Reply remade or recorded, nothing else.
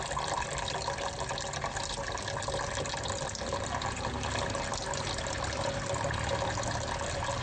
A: recorded